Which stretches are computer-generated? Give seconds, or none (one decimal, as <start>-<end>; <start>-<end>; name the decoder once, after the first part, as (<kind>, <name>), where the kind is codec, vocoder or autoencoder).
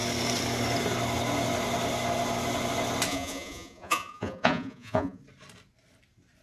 3.1-5.2 (vocoder, Vocos)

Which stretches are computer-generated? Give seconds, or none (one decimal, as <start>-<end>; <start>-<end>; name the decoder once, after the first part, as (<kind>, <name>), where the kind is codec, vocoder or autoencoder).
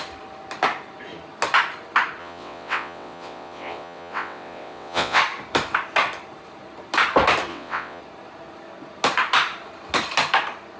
2.2-5.2 (vocoder, WaveNeXt); 7.5-8.0